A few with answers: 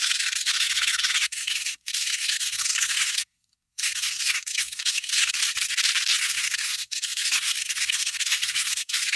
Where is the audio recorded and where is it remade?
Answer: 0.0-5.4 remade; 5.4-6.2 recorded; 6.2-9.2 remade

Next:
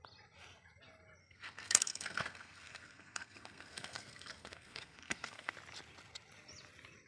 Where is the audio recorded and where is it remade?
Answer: 0.0-1.2 recorded; 1.2-5.5 remade; 5.5-7.1 recorded

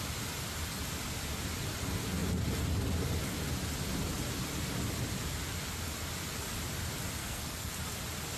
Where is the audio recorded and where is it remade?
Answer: 0.0-7.2 recorded; 7.2-7.7 remade; 7.7-8.4 recorded

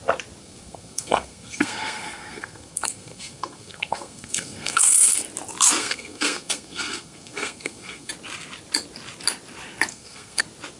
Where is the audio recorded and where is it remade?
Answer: 0.0-0.4 recorded; 0.4-5.2 remade; 5.2-5.8 recorded; 5.8-8.1 remade; 8.1-9.9 recorded; 9.9-10.4 remade; 10.4-10.8 recorded

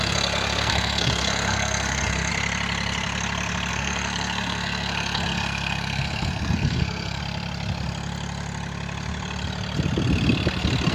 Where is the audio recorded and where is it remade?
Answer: 0.0-2.3 remade; 2.3-3.7 recorded; 3.7-7.2 remade; 7.2-10.9 recorded

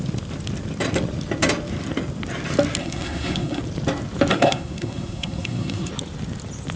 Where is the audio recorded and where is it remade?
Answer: 0.0-2.8 recorded; 2.8-3.6 remade; 3.6-4.3 recorded; 4.3-5.9 remade; 5.9-6.8 recorded

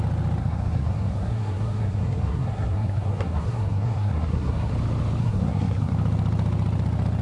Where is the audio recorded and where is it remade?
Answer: 0.0-0.4 recorded; 0.4-4.7 remade; 4.7-5.2 recorded; 5.2-5.9 remade; 5.9-7.2 recorded

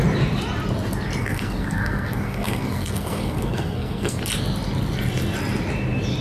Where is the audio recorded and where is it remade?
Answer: 0.0-1.2 recorded; 1.2-4.2 remade; 4.2-6.2 recorded